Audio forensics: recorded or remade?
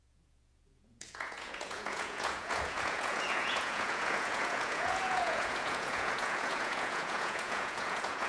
remade